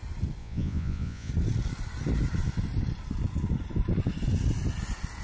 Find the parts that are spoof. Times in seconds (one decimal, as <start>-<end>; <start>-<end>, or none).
0.4-1.3